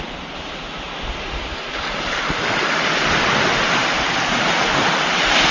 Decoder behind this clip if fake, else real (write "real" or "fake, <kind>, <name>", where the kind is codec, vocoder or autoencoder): real